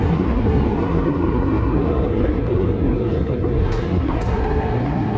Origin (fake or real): fake